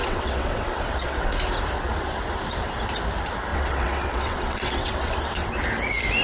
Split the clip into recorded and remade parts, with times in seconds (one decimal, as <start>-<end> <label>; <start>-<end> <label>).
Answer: 0.0-1.3 remade; 1.3-3.5 recorded; 3.5-5.5 remade; 5.5-6.2 recorded